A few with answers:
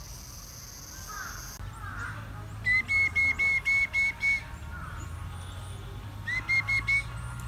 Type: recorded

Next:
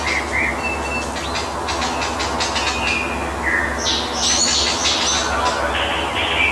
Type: recorded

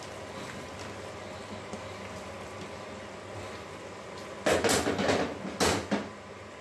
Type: recorded